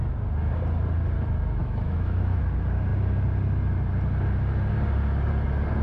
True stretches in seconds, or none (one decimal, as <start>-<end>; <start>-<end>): 0.0-1.6; 2.4-5.8